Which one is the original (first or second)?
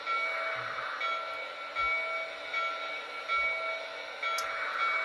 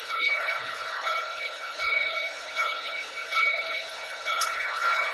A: first